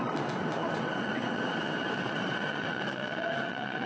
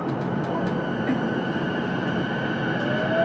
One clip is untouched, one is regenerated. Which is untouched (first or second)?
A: second